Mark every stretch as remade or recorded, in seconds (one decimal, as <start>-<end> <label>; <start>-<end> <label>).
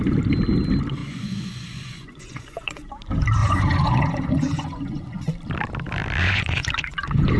0.0-1.0 recorded; 1.0-2.9 remade; 2.9-3.4 recorded; 3.4-5.3 remade; 5.3-6.2 recorded; 6.2-7.4 remade